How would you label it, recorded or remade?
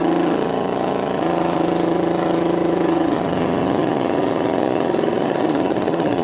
remade